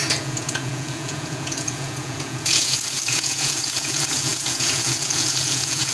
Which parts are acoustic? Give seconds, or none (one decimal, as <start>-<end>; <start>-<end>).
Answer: none